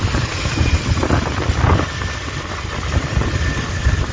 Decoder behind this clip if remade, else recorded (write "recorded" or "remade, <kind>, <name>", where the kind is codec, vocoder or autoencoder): recorded